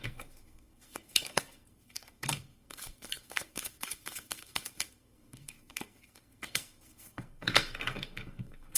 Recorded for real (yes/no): no